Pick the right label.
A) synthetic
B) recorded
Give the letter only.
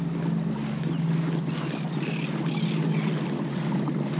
B